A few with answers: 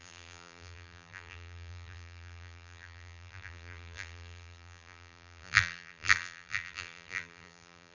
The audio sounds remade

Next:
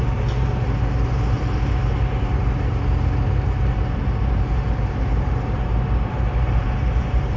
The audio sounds remade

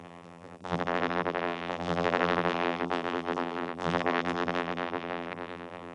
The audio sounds remade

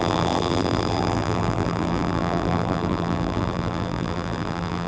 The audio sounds remade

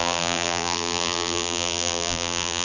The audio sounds remade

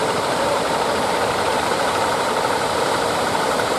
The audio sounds remade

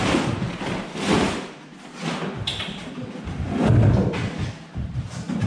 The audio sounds recorded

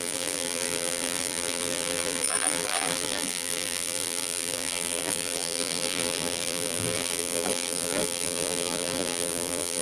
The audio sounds remade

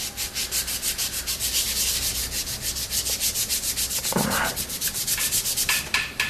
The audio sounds remade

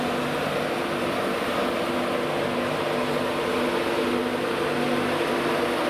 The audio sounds recorded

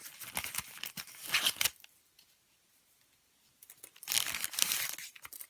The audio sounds recorded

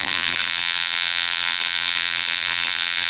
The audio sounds remade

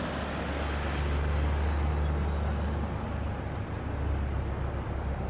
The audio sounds recorded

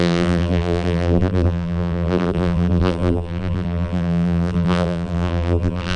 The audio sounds remade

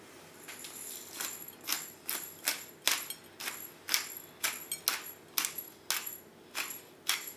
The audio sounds recorded